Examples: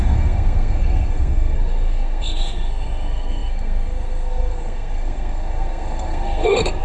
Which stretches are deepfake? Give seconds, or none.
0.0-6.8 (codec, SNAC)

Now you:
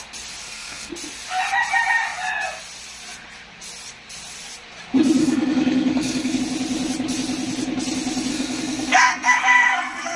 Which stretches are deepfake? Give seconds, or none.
0.4-0.9 (codec, SNAC); 5.2-6.4; 8.3-10.2

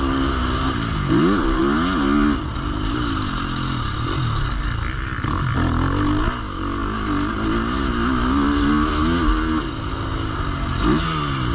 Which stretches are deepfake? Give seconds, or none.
none

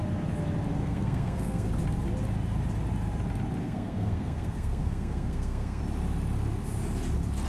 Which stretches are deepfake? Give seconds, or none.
0.8-1.7 (codec, SNAC); 3.6-5.8